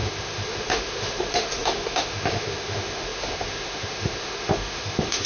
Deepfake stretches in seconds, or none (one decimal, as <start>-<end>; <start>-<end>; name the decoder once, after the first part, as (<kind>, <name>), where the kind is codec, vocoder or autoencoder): 0.0-5.3 (autoencoder, DAC-VAE)